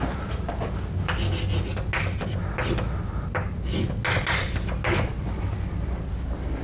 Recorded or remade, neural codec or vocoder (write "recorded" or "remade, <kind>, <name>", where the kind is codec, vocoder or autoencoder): recorded